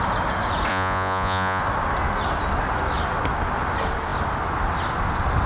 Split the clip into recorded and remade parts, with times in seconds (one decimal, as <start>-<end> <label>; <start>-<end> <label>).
0.0-0.7 recorded; 0.7-1.6 remade; 1.6-5.5 recorded